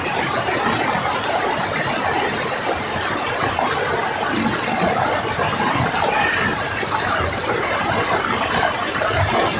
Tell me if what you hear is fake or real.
real